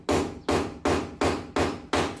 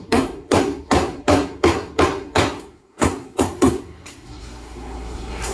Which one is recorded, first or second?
first